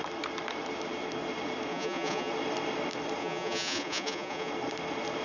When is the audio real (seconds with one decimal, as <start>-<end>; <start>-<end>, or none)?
0.0-1.7; 2.3-3.2; 4.5-5.2